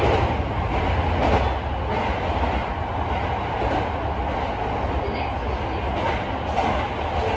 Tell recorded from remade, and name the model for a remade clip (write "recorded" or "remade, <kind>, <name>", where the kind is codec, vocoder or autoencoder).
recorded